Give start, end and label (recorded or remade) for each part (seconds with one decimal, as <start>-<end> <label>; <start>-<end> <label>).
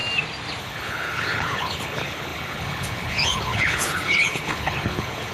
0.0-0.6 recorded; 0.6-5.3 remade